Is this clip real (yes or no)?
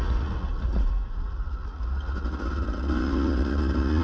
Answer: no